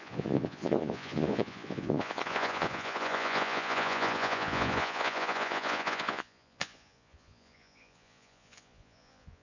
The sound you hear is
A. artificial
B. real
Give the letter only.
A